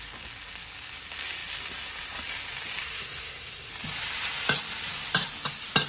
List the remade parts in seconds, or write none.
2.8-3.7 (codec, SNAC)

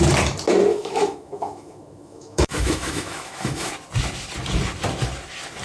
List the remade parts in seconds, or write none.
0.7-3.7 (autoencoder, DAC-VAE)

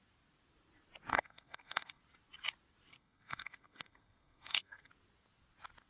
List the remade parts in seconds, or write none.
1.1-2.0 (codec, SNAC); 2.9-4.9

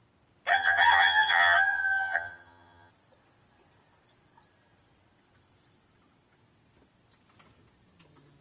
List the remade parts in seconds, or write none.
0.5-2.9 (vocoder, HiFi-GAN)

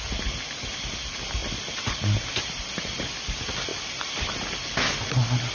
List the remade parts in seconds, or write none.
none